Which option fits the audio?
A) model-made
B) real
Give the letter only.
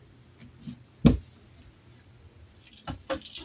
B